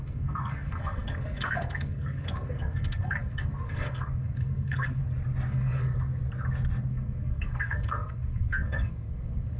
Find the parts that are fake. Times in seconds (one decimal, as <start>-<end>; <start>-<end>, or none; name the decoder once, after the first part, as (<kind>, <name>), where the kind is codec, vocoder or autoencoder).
0.0-5.0 (codec, SNAC); 5.5-5.9; 6.9-9.6